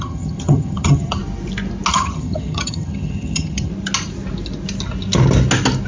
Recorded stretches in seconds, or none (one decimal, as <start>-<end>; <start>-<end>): 1.2-1.9; 3.7-5.9